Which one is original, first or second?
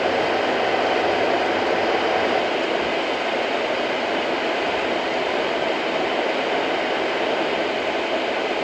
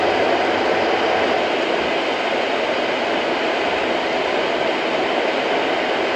second